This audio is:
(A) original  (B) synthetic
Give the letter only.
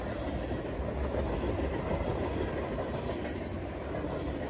A